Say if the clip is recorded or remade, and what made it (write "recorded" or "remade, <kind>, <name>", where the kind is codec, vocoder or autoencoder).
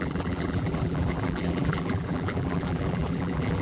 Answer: remade, vocoder, BigVGAN v2